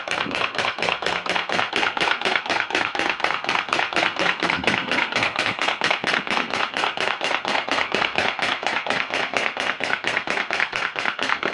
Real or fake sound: fake